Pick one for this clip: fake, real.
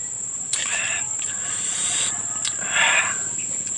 fake